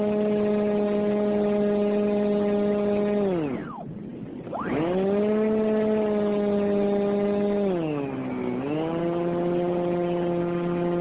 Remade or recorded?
recorded